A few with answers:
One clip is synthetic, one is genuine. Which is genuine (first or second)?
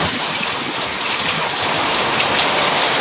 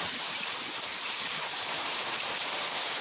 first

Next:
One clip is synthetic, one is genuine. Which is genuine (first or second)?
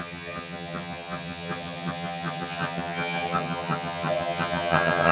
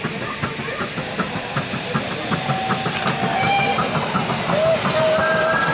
second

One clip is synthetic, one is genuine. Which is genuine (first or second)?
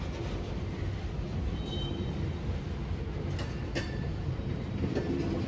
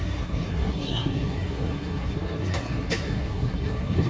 first